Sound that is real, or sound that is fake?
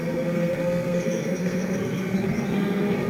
fake